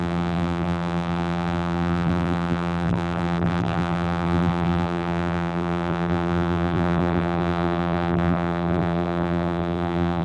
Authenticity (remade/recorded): remade